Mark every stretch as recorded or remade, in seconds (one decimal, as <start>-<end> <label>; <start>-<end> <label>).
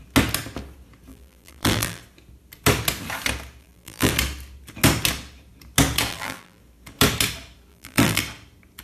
0.0-1.1 recorded; 1.1-2.0 remade; 2.0-3.6 recorded; 3.6-4.1 remade; 4.1-6.1 recorded; 6.1-6.6 remade; 6.6-7.7 recorded; 7.7-8.2 remade; 8.2-8.8 recorded